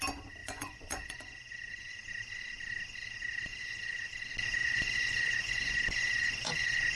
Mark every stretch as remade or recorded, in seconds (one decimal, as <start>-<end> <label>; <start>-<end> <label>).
0.0-0.4 recorded; 0.4-2.0 remade; 2.0-3.5 recorded; 3.5-4.1 remade; 4.1-4.6 recorded; 4.6-7.0 remade